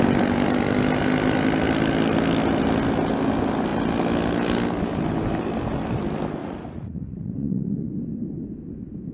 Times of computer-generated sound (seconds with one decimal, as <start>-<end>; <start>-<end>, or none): 6.4-7.9

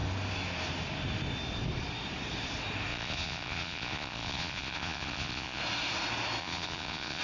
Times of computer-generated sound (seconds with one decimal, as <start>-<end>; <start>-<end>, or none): 2.9-5.6; 6.4-7.2